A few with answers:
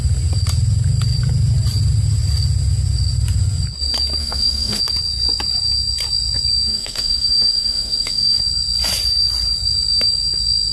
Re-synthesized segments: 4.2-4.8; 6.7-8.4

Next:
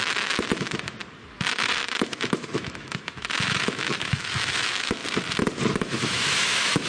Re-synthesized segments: 0.0-1.0; 1.8-5.0; 5.8-6.9

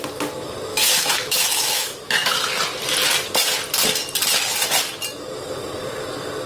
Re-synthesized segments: 0.7-2.5

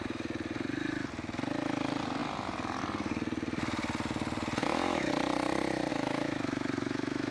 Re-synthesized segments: 4.6-5.1; 5.9-7.3

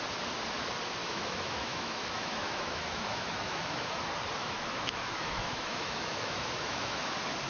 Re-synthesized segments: 1.0-3.9; 4.4-7.1